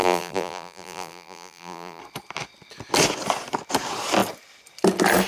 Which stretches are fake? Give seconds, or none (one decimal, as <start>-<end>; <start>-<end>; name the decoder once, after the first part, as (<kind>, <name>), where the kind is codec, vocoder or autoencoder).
0.0-2.0 (vocoder, BigVGAN v2)